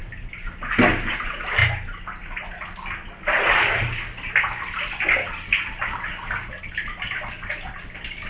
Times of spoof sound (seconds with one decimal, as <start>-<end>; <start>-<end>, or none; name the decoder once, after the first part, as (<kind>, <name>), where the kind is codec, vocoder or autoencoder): none